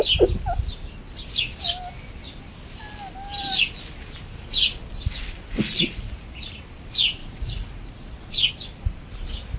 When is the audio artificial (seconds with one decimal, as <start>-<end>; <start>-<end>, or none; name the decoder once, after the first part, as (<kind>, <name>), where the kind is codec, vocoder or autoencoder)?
7.2-8.5 (vocoder, Vocos)